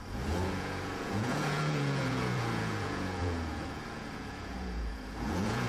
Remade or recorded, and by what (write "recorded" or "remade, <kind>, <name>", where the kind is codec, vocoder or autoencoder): remade, vocoder, Vocos